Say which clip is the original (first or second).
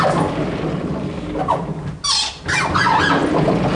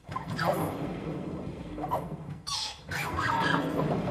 first